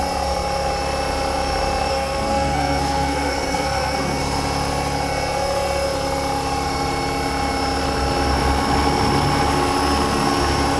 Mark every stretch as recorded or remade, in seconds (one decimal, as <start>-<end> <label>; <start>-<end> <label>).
0.0-1.9 recorded; 1.9-4.2 remade; 4.2-10.8 recorded